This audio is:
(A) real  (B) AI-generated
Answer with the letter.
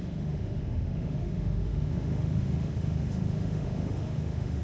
B